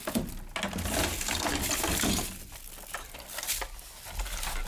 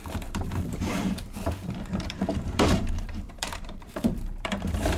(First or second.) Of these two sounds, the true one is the first